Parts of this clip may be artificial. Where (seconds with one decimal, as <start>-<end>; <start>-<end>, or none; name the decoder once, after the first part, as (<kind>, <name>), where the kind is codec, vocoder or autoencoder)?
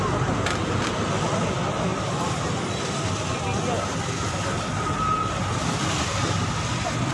none